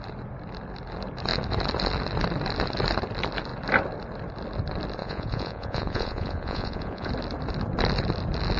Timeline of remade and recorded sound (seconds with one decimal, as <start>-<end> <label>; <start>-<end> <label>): 0.0-5.0 recorded; 5.0-7.1 remade; 7.1-8.6 recorded